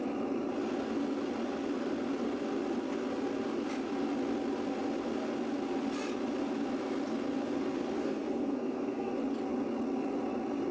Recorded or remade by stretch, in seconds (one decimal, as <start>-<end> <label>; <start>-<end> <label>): 0.0-8.0 recorded; 8.0-9.1 remade; 9.1-10.7 recorded